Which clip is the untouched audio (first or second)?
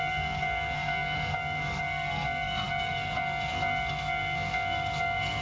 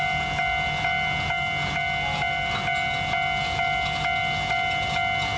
second